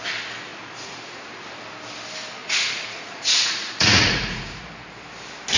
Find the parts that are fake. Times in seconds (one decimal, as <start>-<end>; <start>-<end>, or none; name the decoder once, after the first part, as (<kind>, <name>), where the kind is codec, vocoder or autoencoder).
0.5-1.2 (vocoder, Vocos); 2.4-4.6